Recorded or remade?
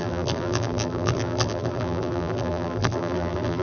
remade